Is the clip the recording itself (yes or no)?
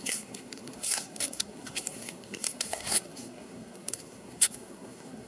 no